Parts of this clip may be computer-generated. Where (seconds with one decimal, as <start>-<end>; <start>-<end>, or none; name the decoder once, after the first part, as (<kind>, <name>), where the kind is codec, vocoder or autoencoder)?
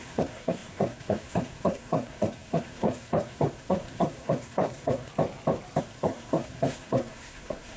0.0-5.1 (codec, SNAC); 5.8-7.8